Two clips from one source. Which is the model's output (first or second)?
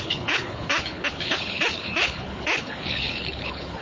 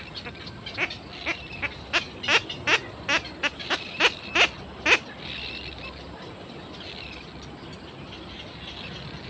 first